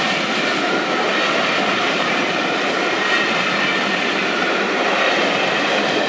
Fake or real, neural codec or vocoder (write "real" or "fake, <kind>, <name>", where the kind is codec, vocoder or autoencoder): fake, vocoder, BigVGAN v2